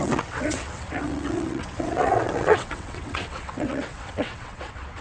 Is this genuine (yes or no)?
no